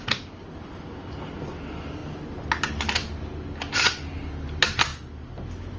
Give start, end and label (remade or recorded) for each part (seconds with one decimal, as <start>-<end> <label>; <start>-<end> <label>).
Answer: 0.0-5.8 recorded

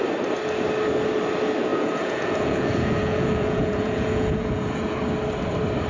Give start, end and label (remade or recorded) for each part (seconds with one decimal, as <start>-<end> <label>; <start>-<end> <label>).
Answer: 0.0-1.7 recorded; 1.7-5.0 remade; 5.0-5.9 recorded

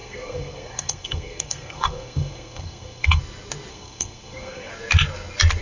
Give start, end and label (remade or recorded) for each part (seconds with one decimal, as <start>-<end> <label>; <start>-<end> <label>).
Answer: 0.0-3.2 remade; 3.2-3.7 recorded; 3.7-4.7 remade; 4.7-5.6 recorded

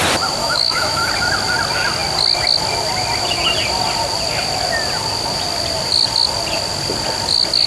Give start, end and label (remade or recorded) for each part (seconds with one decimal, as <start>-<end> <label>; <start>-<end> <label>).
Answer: 0.0-0.4 recorded; 0.4-1.1 remade; 1.1-7.7 recorded

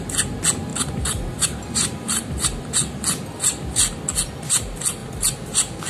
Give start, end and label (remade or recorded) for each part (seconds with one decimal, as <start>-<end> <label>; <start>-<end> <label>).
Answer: 0.0-0.7 recorded; 0.7-2.3 remade; 2.3-5.9 recorded

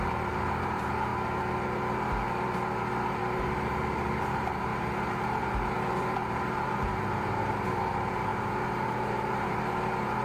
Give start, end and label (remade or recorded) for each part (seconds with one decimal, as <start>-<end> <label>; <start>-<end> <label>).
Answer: 0.0-1.1 remade; 1.1-3.4 recorded; 3.4-10.2 remade